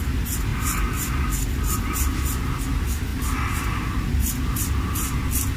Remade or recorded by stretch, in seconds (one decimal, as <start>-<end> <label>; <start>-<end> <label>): 0.0-5.6 recorded